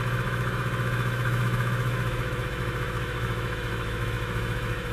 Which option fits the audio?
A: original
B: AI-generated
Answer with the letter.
B